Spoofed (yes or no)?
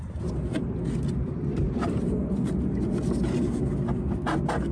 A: no